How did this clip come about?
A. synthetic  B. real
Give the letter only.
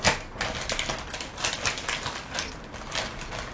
B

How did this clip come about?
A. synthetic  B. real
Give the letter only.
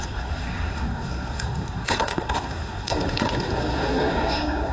A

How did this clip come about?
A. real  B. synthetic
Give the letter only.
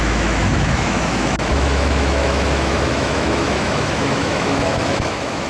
B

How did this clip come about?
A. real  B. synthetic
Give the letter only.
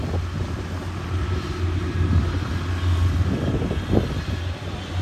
A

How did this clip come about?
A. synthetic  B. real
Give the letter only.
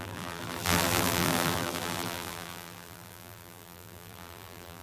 A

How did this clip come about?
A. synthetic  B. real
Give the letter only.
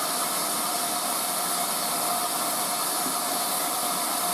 B